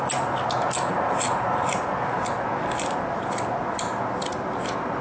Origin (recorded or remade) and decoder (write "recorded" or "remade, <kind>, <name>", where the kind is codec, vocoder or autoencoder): recorded